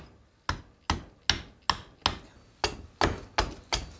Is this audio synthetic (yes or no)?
no